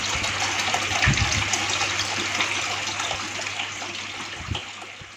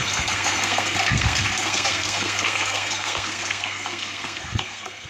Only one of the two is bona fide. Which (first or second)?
first